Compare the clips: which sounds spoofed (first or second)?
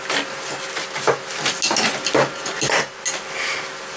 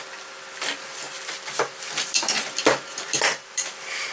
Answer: second